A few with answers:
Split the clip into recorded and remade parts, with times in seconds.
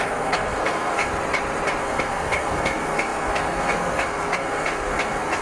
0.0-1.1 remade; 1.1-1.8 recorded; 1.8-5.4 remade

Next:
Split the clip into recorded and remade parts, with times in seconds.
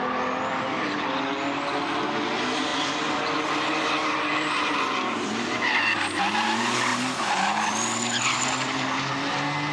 0.0-9.7 recorded